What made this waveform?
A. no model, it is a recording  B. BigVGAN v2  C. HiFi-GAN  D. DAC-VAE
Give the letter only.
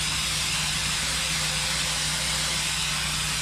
A